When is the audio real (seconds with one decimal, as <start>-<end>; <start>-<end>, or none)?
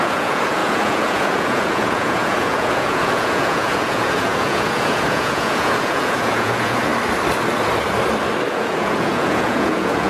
6.9-8.5